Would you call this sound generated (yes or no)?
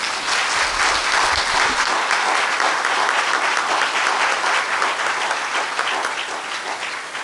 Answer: no